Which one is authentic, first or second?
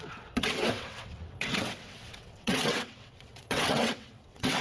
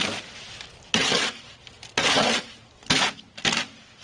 second